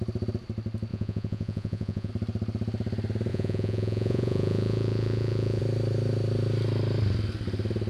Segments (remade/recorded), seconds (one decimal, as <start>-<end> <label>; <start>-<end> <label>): 0.0-0.9 recorded; 0.9-2.1 remade; 2.1-3.3 recorded; 3.3-5.6 remade; 5.6-7.9 recorded